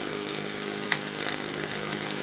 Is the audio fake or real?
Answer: fake